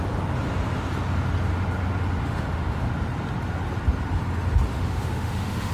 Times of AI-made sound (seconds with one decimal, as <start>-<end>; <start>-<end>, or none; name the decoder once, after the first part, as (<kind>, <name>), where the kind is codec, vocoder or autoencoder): 2.2-2.9 (autoencoder, DAC-VAE); 4.7-5.7